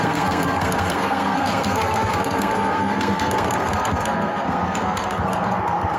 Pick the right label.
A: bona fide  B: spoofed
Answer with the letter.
B